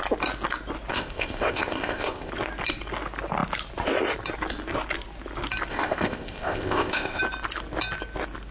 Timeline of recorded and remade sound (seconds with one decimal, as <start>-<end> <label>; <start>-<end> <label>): 0.0-0.9 recorded; 0.9-2.3 remade; 2.3-5.7 recorded; 5.7-7.2 remade; 7.2-8.5 recorded

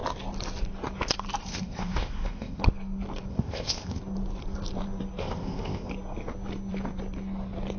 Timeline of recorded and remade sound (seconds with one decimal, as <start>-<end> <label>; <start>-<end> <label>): 0.0-1.4 recorded; 1.4-2.6 remade; 2.6-3.3 recorded; 3.3-4.0 remade; 4.0-5.2 recorded; 5.2-5.9 remade; 5.9-7.8 recorded

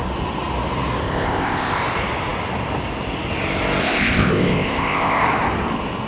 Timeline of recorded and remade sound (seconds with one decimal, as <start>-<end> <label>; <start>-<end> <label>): 0.0-1.0 recorded; 1.0-1.8 remade; 1.8-3.8 recorded; 3.8-5.2 remade; 5.2-6.1 recorded

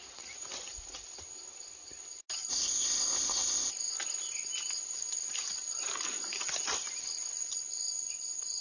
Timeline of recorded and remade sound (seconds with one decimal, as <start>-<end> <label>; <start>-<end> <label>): 0.0-2.5 recorded; 2.5-3.7 remade; 3.7-8.6 recorded